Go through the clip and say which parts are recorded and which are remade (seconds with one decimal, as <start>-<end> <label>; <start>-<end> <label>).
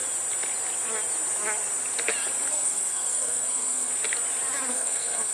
0.0-2.5 recorded; 2.5-3.9 remade; 3.9-4.7 recorded; 4.7-5.3 remade